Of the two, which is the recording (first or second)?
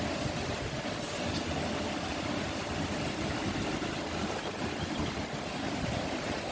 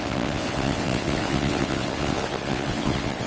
first